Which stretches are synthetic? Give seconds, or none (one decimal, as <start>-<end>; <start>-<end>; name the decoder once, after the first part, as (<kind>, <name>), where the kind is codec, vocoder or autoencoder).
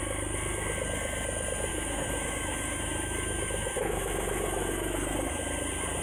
1.7-5.3 (autoencoder, DAC-VAE)